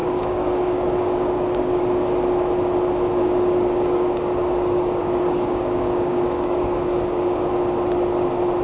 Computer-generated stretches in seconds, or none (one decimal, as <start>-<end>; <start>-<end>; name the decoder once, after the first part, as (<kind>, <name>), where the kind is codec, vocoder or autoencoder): 0.0-1.8 (codec, DAC); 3.2-7.5